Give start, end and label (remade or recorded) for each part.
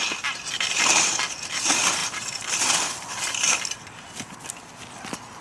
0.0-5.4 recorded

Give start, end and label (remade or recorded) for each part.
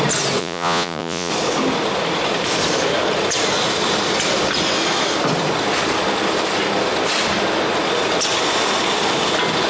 0.0-0.4 recorded; 0.4-1.3 remade; 1.3-9.7 recorded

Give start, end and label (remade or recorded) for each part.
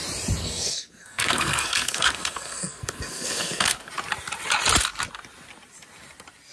0.0-0.4 recorded; 0.4-3.9 remade; 3.9-6.5 recorded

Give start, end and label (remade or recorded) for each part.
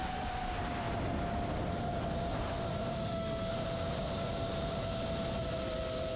0.0-2.9 recorded; 2.9-3.5 remade; 3.5-6.2 recorded